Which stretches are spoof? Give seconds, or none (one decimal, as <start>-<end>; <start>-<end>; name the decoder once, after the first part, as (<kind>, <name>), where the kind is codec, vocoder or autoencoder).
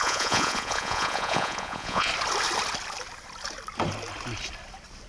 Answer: 0.0-2.1 (vocoder, Vocos)